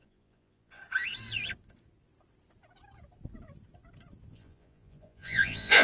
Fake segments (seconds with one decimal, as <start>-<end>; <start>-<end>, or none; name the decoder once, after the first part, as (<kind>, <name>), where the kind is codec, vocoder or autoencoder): 0.0-0.8 (vocoder, Vocos); 4.3-5.8